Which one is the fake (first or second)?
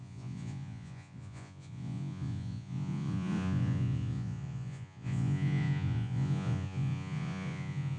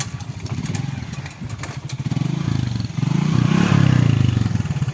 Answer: first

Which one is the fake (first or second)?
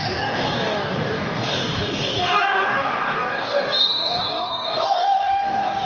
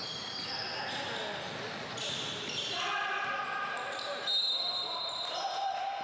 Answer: first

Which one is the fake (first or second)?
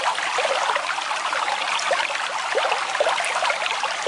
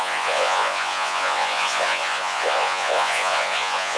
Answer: second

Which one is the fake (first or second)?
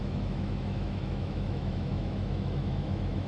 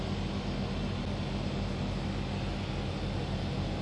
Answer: first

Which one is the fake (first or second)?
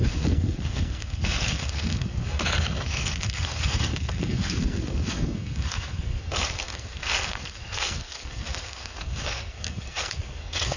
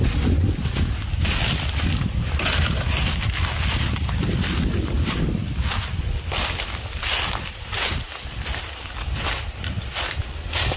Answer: first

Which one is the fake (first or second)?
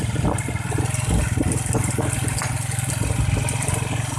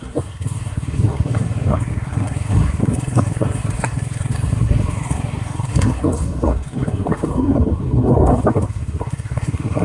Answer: second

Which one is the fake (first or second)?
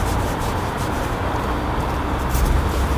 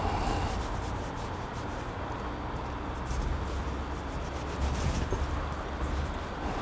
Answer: first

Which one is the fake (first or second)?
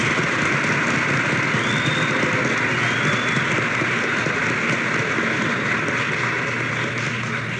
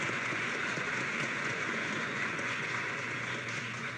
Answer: second